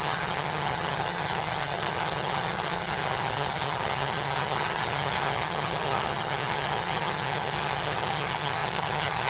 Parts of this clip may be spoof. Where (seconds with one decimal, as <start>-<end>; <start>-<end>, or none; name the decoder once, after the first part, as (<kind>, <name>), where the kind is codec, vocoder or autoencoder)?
0.0-9.3 (vocoder, HiFi-GAN)